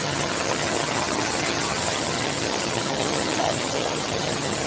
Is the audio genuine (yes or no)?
no